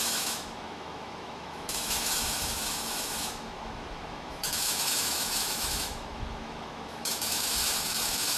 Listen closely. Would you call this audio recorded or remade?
remade